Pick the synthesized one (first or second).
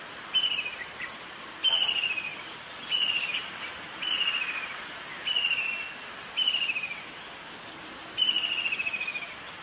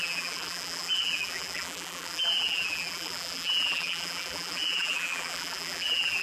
second